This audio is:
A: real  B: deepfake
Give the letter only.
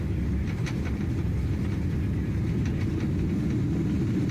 B